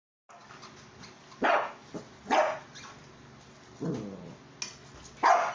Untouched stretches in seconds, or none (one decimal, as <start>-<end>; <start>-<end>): 0.0-0.4; 3.1-5.5